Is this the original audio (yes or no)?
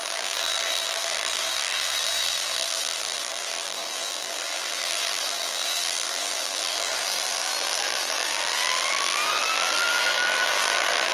no